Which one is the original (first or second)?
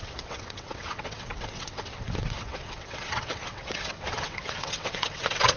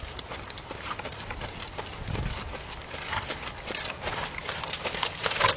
second